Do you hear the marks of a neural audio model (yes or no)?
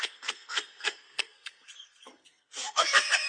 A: yes